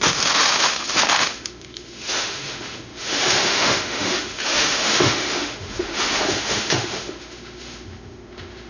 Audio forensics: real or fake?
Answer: fake